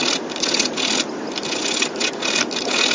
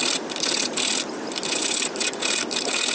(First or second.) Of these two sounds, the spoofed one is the second